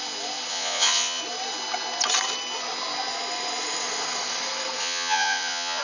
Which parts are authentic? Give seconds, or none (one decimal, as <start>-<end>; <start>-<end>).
0.0-0.5; 1.2-4.8